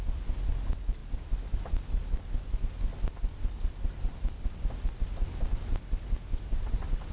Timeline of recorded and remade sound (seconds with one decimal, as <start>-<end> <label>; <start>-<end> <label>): 0.0-7.1 recorded